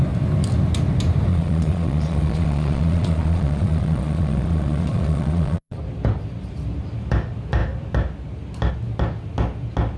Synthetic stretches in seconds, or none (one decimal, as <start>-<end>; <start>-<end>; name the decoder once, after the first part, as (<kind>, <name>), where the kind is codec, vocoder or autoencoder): 1.3-5.8 (vocoder, Vocos)